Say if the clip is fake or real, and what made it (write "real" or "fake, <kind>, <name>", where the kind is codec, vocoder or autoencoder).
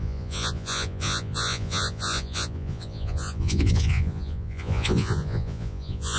fake, vocoder, Vocos